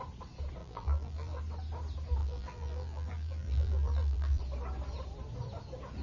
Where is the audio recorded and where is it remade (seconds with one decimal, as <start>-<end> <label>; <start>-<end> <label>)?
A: 0.0-0.6 recorded; 0.6-1.4 remade; 1.4-2.2 recorded; 2.2-4.4 remade; 4.4-6.0 recorded